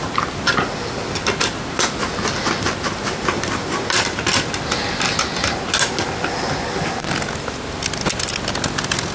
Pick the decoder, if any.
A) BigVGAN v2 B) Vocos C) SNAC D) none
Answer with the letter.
D